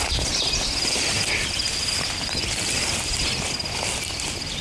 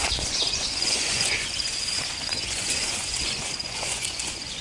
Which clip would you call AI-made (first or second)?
second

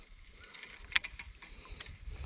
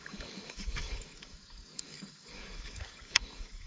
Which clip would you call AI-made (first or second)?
second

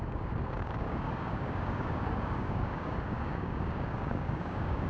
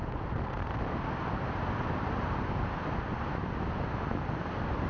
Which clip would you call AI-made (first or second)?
first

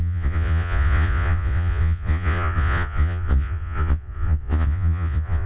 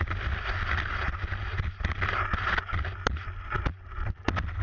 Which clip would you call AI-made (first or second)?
first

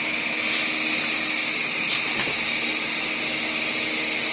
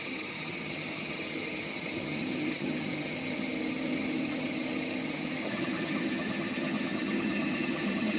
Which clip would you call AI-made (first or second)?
second